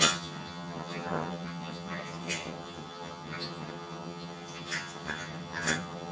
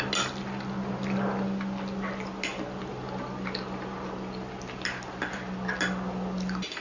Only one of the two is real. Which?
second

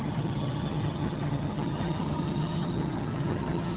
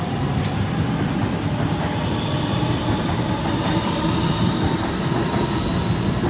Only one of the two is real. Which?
second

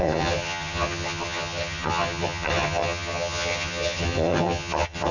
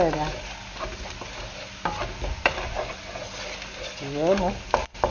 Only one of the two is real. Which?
second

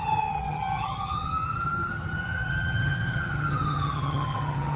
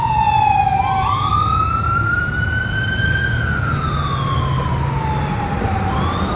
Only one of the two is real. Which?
second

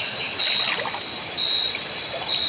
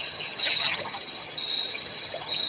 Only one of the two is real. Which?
first